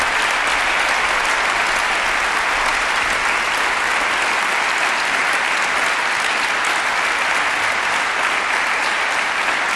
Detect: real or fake real